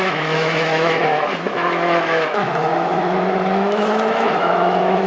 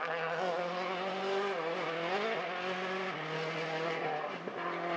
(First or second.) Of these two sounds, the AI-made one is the first